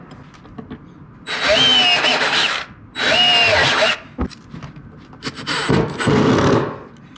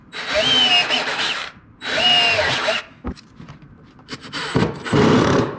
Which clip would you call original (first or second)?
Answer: first